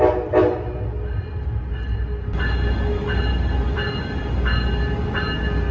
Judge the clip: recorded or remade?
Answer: recorded